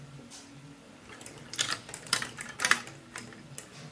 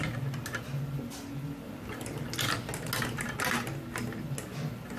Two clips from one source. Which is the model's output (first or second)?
first